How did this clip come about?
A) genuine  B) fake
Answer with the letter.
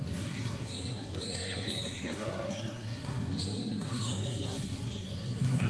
B